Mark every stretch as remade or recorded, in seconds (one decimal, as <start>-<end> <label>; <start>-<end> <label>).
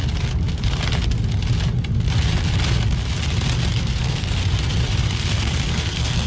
0.0-3.8 recorded; 3.8-4.4 remade; 4.4-5.0 recorded; 5.0-6.3 remade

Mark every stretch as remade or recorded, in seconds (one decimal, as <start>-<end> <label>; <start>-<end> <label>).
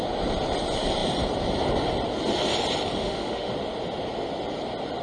0.0-3.0 recorded; 3.0-3.5 remade; 3.5-5.0 recorded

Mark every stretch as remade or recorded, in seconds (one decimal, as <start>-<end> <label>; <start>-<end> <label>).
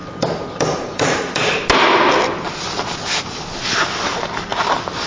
0.0-1.6 remade; 1.6-4.5 recorded; 4.5-5.1 remade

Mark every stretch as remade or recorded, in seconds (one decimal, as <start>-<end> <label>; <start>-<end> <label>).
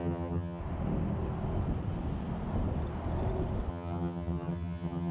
0.0-0.6 remade; 0.6-3.7 recorded; 3.7-5.1 remade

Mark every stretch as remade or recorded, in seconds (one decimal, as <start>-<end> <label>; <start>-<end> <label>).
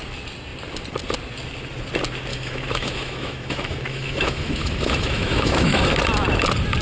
0.0-2.3 recorded; 2.3-5.8 remade; 5.8-6.8 recorded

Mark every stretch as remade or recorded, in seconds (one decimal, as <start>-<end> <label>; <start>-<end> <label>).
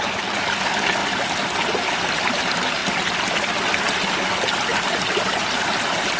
0.0-1.0 recorded; 1.0-2.0 remade; 2.0-4.7 recorded; 4.7-5.3 remade; 5.3-6.2 recorded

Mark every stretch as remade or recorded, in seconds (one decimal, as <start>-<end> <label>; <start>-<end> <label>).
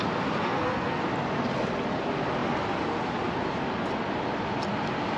0.0-0.4 recorded; 0.4-1.0 remade; 1.0-5.2 recorded